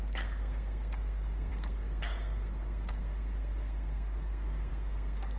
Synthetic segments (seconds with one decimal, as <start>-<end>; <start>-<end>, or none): 0.0-5.4